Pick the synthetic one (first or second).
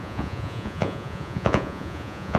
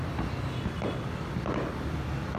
first